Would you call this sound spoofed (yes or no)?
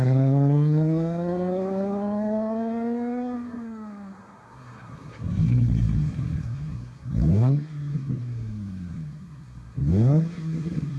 yes